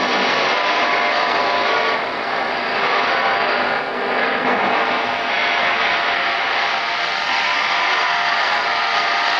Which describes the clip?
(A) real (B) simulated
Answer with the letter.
B